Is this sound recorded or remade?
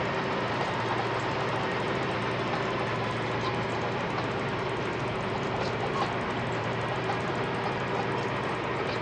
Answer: recorded